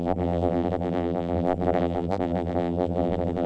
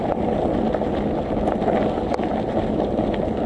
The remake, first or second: first